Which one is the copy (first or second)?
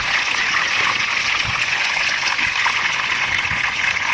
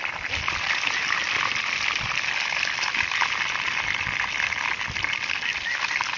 first